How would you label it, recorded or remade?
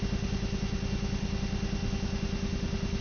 recorded